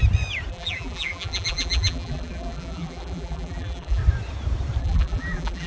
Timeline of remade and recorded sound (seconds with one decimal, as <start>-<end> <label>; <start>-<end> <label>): 0.0-0.5 recorded; 0.5-4.0 remade; 4.0-4.8 recorded; 4.8-5.7 remade